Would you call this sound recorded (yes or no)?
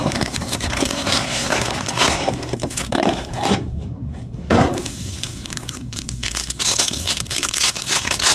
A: no